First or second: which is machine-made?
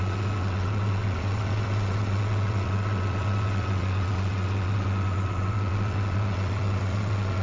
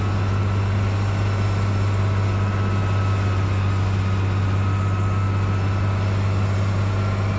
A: first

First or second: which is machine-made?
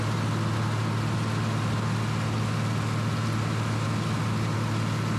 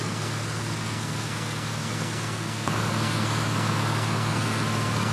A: second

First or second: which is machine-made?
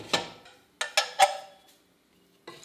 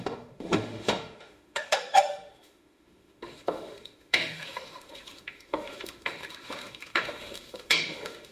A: second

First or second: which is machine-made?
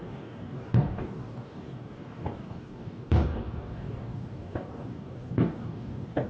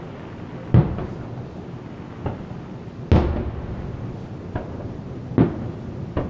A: first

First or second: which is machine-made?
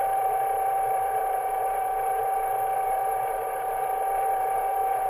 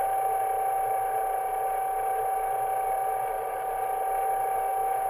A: first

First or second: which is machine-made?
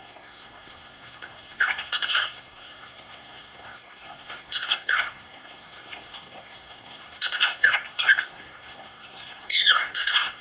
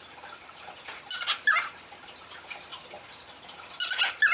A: first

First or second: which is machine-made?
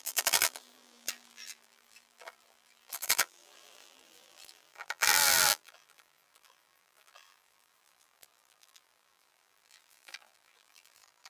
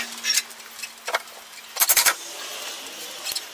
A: first